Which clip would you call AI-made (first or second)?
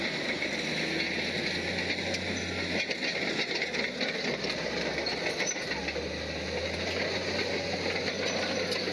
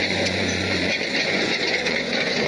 second